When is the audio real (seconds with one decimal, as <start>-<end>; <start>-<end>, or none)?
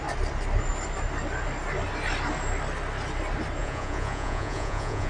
0.0-3.6